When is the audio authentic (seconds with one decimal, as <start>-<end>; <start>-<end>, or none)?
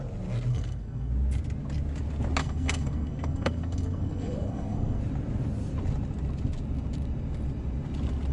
0.0-0.5; 1.1-2.4; 5.0-8.3